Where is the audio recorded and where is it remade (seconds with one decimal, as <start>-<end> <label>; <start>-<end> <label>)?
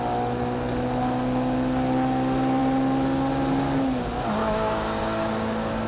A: 0.0-4.4 recorded; 4.4-5.9 remade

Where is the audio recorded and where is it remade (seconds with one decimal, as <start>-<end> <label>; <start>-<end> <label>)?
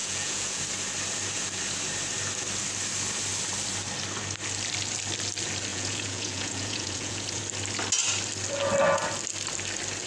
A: 0.0-0.6 remade; 0.6-5.7 recorded; 5.7-7.4 remade; 7.4-10.1 recorded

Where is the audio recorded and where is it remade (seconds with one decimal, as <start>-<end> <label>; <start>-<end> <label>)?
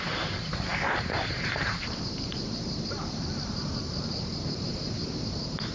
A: 0.0-5.7 remade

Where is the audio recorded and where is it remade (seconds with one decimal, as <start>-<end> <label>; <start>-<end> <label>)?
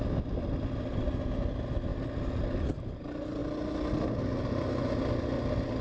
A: 0.0-5.8 recorded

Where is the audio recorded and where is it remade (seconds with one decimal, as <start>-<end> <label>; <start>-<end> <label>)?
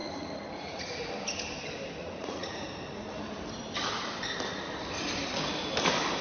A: 0.0-0.9 remade; 0.9-2.0 recorded; 2.0-2.7 remade; 2.7-6.2 recorded